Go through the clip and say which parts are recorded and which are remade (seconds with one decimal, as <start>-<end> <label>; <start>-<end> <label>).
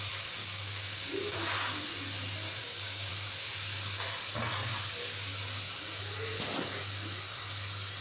0.0-0.4 recorded; 0.4-1.3 remade; 1.3-2.6 recorded; 2.6-3.1 remade; 3.1-8.0 recorded